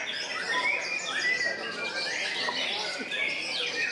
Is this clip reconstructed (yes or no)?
no